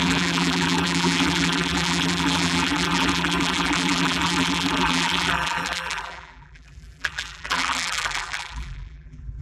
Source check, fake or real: fake